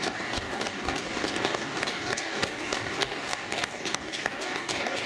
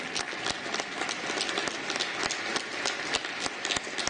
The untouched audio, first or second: second